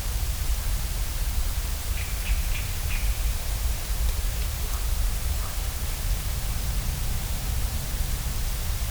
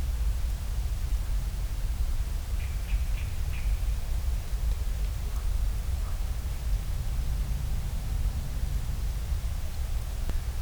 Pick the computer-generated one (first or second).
first